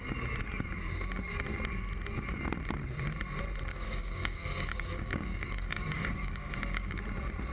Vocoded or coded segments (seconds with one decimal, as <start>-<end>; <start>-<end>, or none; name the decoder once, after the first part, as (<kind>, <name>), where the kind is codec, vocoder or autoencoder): 3.7-7.0 (codec, DAC)